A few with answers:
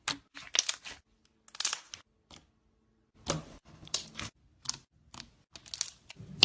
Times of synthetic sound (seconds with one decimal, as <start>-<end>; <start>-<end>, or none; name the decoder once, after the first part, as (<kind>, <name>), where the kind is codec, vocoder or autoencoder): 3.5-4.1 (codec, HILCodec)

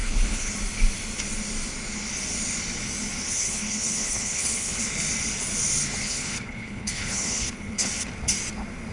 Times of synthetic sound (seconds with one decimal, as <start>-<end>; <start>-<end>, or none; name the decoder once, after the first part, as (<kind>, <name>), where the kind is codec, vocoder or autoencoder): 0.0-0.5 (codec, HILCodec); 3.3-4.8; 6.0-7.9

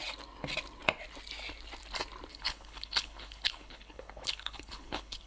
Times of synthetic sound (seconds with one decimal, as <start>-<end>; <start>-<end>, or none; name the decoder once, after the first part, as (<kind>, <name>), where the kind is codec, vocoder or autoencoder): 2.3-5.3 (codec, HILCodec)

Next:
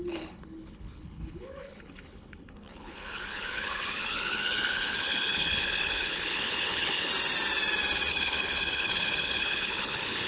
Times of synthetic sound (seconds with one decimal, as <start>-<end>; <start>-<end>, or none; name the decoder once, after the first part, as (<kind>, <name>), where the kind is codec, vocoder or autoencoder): 0.0-7.1 (codec, HILCodec); 8.1-10.3

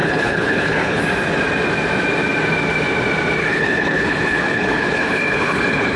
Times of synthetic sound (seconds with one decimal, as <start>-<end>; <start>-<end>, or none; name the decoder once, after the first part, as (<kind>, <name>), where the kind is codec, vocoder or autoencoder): 0.0-1.0 (codec, HILCodec); 3.4-6.0

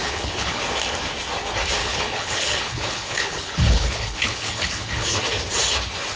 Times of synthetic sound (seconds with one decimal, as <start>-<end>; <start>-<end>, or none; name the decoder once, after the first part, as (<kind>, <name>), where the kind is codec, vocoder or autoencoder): 0.0-0.6 (codec, HILCodec); 1.8-5.2

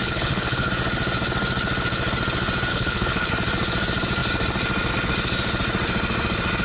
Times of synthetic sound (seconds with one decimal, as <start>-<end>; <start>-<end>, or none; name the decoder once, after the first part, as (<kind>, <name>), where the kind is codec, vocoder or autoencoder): 0.0-0.7 (codec, HILCodec); 2.7-3.3